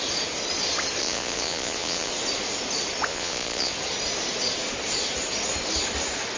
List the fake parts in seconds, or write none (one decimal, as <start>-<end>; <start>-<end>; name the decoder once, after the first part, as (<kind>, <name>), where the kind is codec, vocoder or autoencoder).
1.0-2.1 (vocoder, Vocos); 3.1-3.7